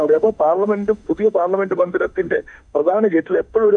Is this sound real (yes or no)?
no